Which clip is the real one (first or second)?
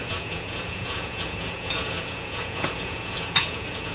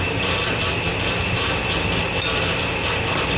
second